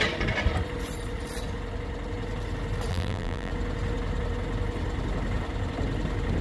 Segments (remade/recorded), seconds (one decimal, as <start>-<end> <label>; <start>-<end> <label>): 0.0-2.9 recorded; 2.9-3.5 remade; 3.5-6.4 recorded